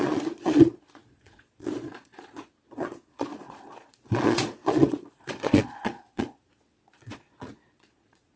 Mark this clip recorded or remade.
remade